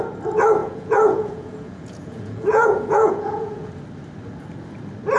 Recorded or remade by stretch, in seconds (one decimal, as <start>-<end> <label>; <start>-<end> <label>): 0.0-0.6 recorded; 0.6-3.7 remade; 3.7-5.2 recorded